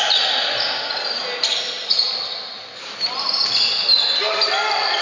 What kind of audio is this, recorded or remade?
recorded